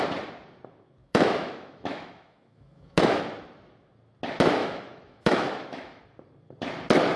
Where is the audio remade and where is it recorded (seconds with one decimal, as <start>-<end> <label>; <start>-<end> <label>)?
0.0-1.0 recorded; 1.0-3.2 remade; 3.2-4.6 recorded; 4.6-6.0 remade; 6.0-7.2 recorded